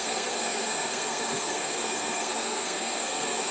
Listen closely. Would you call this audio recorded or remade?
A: remade